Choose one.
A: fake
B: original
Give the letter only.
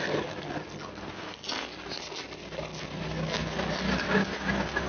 B